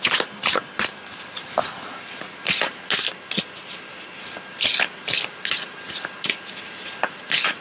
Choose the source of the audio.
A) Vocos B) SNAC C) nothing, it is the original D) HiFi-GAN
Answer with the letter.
C